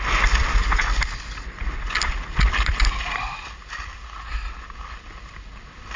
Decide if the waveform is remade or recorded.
recorded